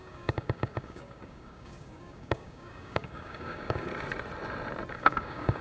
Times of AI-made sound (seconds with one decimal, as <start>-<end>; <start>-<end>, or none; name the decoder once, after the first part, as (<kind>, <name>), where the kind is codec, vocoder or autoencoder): 0.0-3.9 (codec, DAC); 4.9-5.6